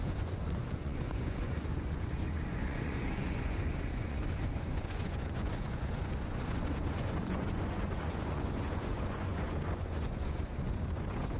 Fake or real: fake